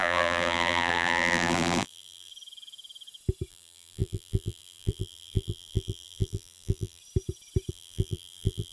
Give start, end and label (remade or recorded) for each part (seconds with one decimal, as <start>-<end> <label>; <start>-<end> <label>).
0.0-2.3 remade; 2.3-3.5 recorded; 3.5-7.0 remade; 7.0-7.7 recorded; 7.7-8.7 remade